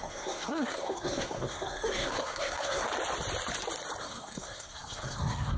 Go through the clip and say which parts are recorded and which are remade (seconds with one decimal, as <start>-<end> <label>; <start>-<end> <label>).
0.0-2.9 remade; 2.9-4.0 recorded; 4.0-5.6 remade